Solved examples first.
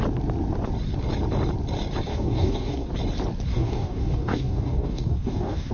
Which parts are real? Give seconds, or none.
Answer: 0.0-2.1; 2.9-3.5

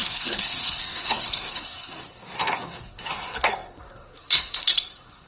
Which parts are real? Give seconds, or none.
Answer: none

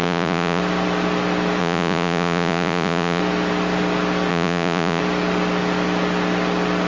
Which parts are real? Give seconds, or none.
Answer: 0.6-1.6; 3.2-4.3; 5.0-6.9

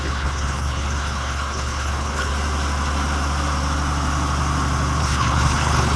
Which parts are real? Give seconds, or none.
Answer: 2.3-5.0

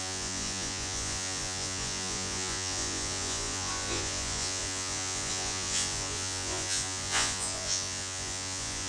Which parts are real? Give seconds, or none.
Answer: none

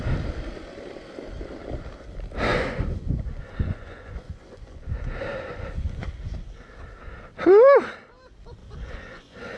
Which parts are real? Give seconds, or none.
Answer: 0.0-2.5; 6.1-8.6